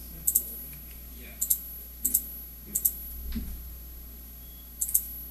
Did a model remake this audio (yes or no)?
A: no